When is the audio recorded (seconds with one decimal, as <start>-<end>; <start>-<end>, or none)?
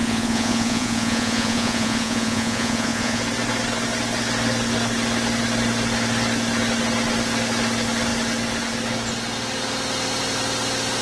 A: 3.2-11.0